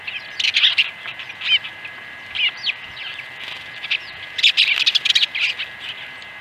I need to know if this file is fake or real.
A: real